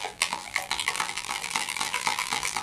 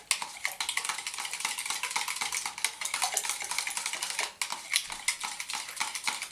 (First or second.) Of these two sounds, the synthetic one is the first